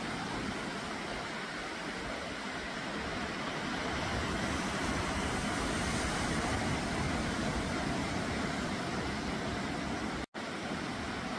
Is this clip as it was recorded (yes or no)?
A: yes